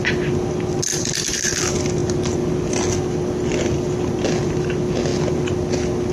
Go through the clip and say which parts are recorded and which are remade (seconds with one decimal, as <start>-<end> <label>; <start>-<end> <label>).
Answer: 0.0-6.1 recorded